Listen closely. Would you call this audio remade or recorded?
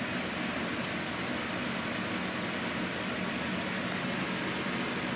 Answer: recorded